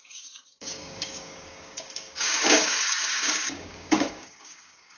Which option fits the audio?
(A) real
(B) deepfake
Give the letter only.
B